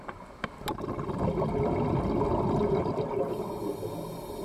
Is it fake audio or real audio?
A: real